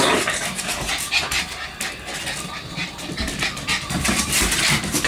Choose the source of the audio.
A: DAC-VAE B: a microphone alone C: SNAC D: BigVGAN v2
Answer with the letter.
B